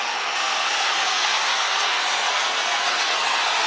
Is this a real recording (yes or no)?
no